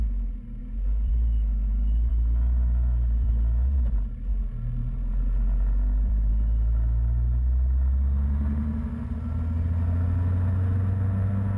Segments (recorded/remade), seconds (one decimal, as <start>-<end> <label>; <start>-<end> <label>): 0.0-0.6 recorded; 0.6-1.1 remade; 1.1-2.1 recorded; 2.1-3.3 remade; 3.3-4.8 recorded; 4.8-6.3 remade; 6.3-11.6 recorded